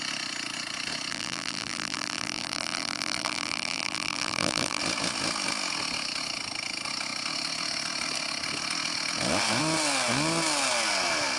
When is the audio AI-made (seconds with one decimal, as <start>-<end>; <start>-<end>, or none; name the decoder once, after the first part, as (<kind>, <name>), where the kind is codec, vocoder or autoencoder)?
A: 1.1-4.8 (vocoder, BigVGAN v2)